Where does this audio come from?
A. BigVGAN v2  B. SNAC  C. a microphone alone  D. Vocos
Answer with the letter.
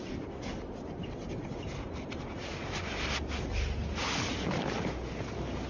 C